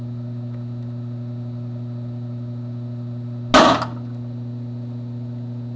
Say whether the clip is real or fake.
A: real